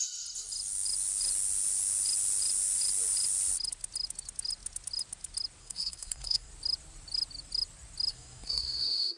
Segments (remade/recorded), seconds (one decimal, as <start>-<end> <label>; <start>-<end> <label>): 0.0-5.6 recorded; 5.6-6.5 remade; 6.5-8.1 recorded; 8.1-9.2 remade